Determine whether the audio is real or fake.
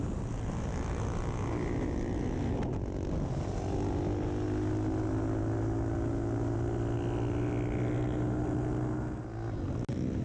real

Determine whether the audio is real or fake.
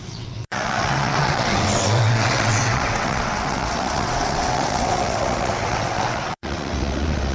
fake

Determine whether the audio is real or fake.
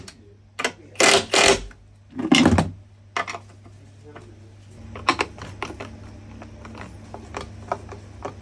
real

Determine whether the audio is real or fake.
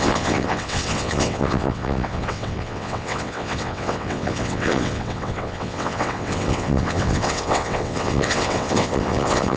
fake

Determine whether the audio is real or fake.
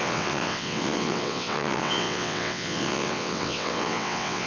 fake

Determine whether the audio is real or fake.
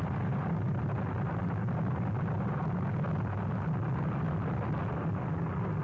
real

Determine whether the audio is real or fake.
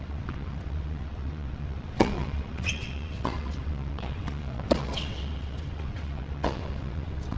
fake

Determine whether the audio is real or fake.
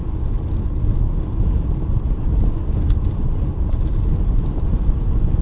real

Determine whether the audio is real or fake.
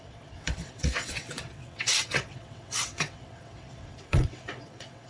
fake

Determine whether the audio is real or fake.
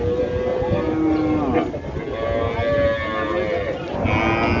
real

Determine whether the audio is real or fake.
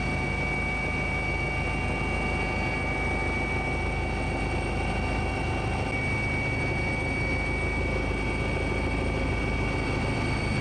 real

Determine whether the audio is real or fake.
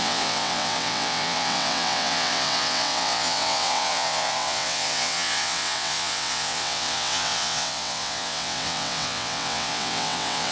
fake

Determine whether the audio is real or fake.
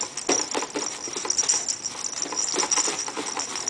real